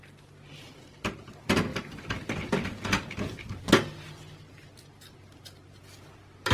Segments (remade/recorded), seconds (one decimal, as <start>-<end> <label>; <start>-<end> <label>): 0.0-6.5 recorded